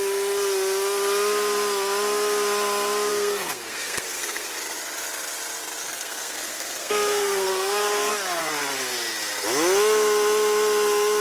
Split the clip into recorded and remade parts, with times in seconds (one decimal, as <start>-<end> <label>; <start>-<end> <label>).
0.0-3.1 recorded; 3.1-4.5 remade; 4.5-5.8 recorded; 5.8-8.1 remade; 8.1-11.2 recorded